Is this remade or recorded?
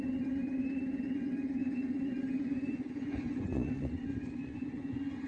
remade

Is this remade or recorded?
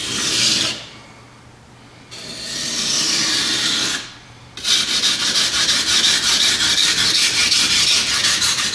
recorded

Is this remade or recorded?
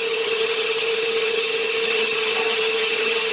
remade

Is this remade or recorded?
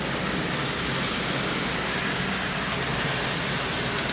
recorded